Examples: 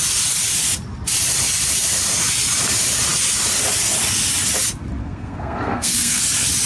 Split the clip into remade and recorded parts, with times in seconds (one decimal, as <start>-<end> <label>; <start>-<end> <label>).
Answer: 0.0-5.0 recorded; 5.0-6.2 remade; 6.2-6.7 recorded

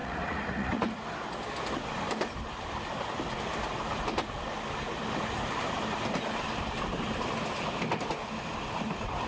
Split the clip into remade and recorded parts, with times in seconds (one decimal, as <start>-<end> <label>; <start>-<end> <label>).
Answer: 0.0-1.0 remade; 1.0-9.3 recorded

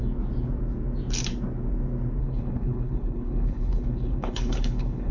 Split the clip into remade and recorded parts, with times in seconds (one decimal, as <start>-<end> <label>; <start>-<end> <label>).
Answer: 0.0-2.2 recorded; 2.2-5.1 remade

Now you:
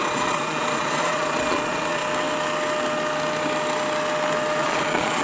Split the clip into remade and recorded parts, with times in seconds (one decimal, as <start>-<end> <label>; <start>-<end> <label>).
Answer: 0.0-2.0 remade; 2.0-4.6 recorded; 4.6-5.2 remade

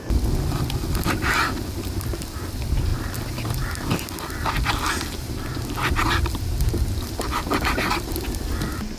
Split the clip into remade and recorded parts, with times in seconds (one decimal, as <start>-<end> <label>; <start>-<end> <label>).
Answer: 0.0-9.0 recorded

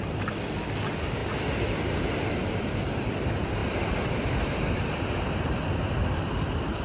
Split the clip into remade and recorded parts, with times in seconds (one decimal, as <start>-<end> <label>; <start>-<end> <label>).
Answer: 0.0-6.8 recorded

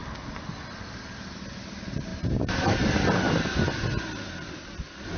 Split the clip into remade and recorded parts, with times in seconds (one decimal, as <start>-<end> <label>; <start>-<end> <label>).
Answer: 0.0-5.2 recorded